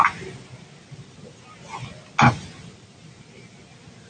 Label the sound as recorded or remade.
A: recorded